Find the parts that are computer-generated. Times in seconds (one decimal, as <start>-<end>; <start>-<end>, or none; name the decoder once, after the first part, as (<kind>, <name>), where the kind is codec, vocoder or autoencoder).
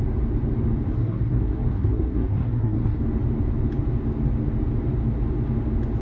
0.9-3.0 (codec, SNAC)